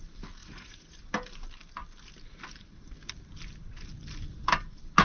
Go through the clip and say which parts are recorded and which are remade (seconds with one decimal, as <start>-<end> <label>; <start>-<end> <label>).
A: 0.0-0.4 recorded; 0.4-1.0 remade; 1.0-5.0 recorded